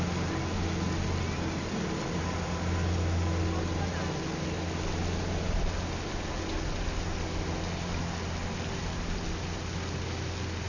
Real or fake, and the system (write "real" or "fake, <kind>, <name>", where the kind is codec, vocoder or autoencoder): real